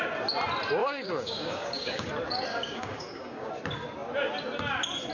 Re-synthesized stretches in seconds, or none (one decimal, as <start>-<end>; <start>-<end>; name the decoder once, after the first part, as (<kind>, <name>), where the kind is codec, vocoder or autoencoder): 0.8-2.1 (codec, DAC); 2.5-3.5